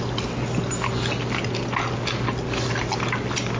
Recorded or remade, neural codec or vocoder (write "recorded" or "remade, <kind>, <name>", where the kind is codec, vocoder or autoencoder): recorded